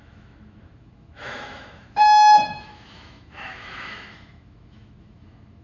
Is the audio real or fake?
fake